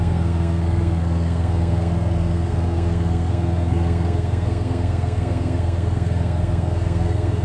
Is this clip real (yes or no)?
no